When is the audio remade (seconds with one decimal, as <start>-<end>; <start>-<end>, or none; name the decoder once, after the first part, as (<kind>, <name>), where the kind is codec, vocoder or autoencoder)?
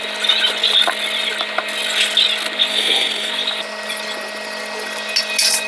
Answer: 2.7-3.3 (codec, SNAC)